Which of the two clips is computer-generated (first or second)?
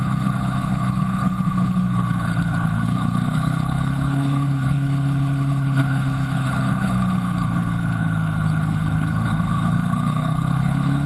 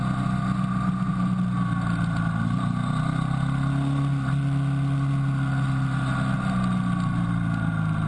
first